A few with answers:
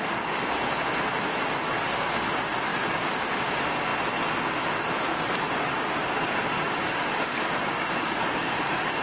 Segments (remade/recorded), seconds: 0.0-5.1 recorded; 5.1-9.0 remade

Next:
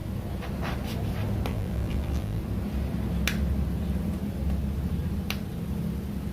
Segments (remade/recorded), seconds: 0.0-1.5 recorded; 1.5-2.4 remade; 2.4-6.3 recorded

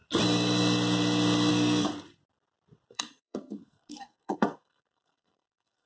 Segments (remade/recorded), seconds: 0.0-1.5 recorded; 1.5-1.9 remade; 1.9-2.9 recorded; 2.9-5.9 remade

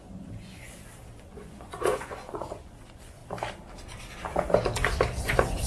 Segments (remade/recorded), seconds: 0.0-0.8 remade; 0.8-1.3 recorded; 1.3-3.2 remade; 3.2-5.2 recorded; 5.2-5.7 remade

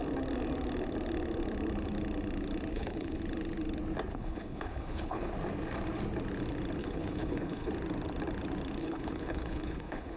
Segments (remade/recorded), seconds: 0.0-2.7 recorded; 2.7-3.2 remade; 3.2-4.1 recorded; 4.1-5.3 remade; 5.3-6.8 recorded; 6.8-7.7 remade; 7.7-8.8 recorded; 8.8-10.2 remade

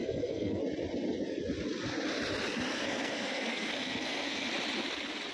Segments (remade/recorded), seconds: 0.0-0.6 remade; 0.6-2.7 recorded; 2.7-4.5 remade; 4.5-5.3 recorded